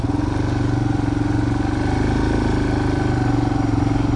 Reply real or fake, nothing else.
real